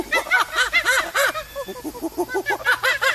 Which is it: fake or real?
real